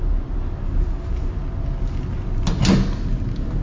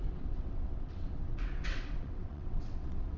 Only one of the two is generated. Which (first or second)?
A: second